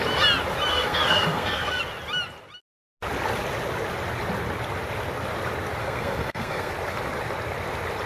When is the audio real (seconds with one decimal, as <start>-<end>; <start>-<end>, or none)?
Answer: 0.0-0.7; 1.8-5.8; 6.7-8.1